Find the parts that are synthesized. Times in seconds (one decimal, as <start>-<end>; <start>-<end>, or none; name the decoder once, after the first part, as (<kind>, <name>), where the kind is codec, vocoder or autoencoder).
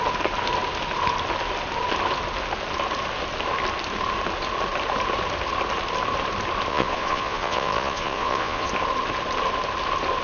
6.7-8.7 (vocoder, Vocos)